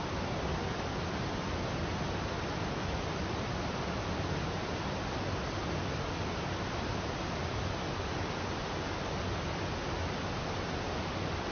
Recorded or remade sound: recorded